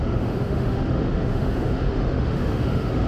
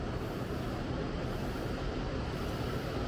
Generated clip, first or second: first